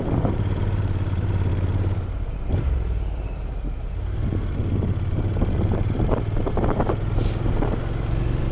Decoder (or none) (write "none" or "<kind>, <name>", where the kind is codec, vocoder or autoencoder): vocoder, BigVGAN v2